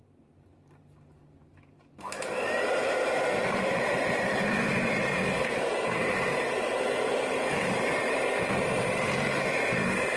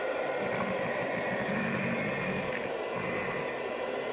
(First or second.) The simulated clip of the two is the first